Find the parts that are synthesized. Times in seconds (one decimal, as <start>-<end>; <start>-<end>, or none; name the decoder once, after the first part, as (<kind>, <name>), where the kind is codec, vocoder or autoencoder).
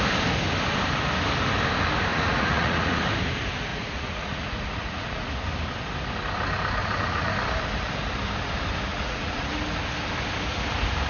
2.1-3.0 (vocoder, Vocos); 3.7-5.3; 6.8-7.3; 8.9-9.5